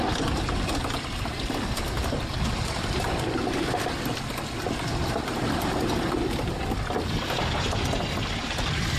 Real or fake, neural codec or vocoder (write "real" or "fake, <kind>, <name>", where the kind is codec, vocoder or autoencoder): real